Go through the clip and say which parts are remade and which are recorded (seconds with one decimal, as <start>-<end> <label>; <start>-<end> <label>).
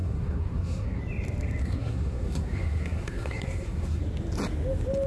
0.0-1.0 remade; 1.0-1.6 recorded; 1.6-4.0 remade; 4.0-5.1 recorded